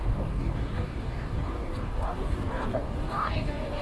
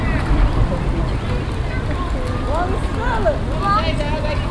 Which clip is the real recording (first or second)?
second